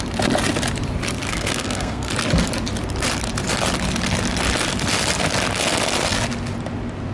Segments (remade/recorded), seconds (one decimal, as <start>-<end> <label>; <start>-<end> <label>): 0.0-1.3 recorded; 1.3-2.1 remade; 2.1-7.1 recorded